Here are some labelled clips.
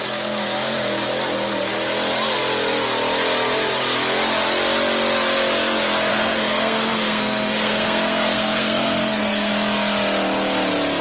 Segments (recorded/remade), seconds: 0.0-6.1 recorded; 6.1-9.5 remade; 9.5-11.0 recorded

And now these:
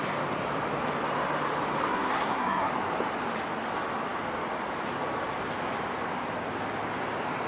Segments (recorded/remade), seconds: 0.0-1.9 recorded; 1.9-2.7 remade; 2.7-7.5 recorded

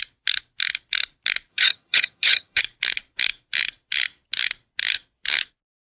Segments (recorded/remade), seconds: 0.0-1.5 recorded; 1.5-2.6 remade; 2.6-5.9 recorded

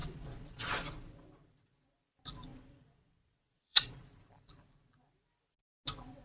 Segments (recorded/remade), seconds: 0.0-0.7 remade; 0.7-2.5 recorded; 2.5-4.0 remade; 4.0-6.2 recorded

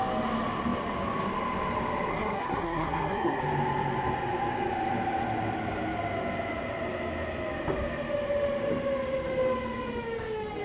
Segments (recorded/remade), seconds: 0.0-2.1 recorded; 2.1-3.4 remade; 3.4-10.6 recorded